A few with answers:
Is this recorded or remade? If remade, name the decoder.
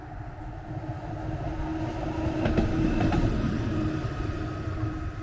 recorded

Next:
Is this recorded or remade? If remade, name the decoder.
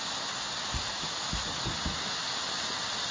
recorded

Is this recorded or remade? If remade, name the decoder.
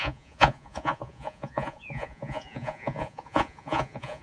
remade, vocoder, Vocos